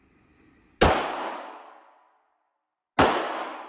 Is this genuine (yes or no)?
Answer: yes